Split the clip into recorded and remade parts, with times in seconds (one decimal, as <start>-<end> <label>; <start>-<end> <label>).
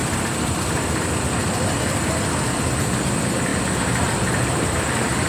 0.0-1.1 remade; 1.1-3.5 recorded; 3.5-5.3 remade